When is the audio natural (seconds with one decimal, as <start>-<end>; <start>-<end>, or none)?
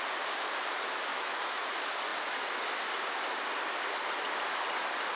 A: 0.0-1.1; 1.6-5.2